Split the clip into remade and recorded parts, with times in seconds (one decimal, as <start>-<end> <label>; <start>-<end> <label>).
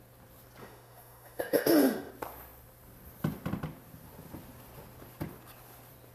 0.0-0.6 recorded; 0.6-2.1 remade; 2.1-6.1 recorded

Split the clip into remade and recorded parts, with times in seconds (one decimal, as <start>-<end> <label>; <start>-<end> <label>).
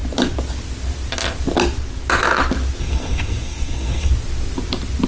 0.0-2.8 recorded; 2.8-4.1 remade; 4.1-5.1 recorded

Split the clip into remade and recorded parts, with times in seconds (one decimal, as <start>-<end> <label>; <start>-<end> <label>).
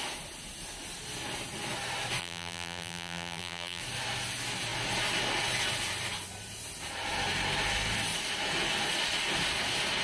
0.0-2.2 recorded; 2.2-3.8 remade; 3.8-10.0 recorded